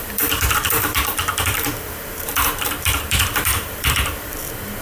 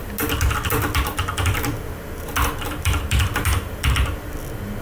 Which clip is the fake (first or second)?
first